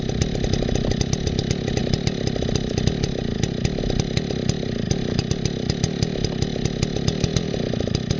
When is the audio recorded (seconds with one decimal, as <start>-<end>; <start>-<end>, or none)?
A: 0.0-8.2